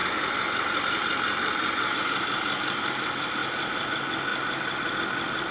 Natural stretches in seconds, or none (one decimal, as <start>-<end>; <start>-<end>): 0.0-3.4; 3.9-4.3; 4.9-5.5